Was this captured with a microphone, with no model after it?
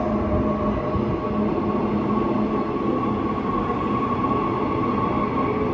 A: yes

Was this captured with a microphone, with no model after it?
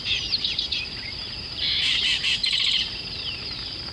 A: no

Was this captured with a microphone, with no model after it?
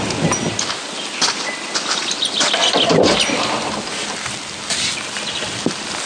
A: yes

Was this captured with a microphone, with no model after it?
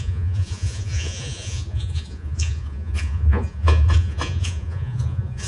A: no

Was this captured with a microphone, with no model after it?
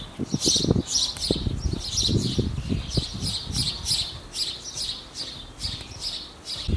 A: yes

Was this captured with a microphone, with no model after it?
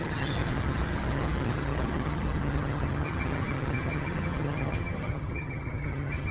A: no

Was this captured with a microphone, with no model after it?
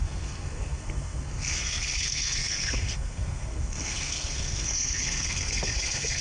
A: no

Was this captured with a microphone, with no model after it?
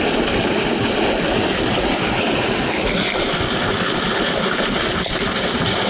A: yes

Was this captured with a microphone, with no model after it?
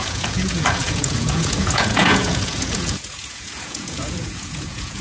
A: no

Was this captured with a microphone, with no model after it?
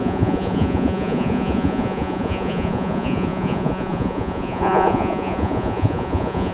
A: no